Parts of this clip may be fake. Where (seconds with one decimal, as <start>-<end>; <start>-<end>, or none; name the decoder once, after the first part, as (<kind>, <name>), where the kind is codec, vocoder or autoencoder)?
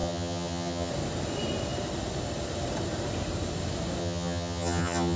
0.0-0.9 (vocoder, HiFi-GAN); 4.0-5.2